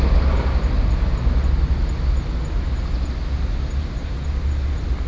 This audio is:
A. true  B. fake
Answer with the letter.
A